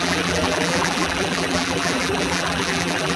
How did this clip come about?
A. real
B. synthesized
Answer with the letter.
B